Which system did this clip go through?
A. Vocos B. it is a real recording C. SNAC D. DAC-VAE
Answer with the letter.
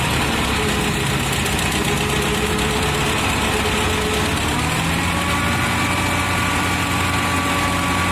B